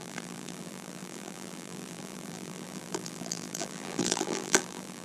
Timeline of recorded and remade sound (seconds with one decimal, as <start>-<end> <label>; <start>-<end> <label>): 0.0-5.0 remade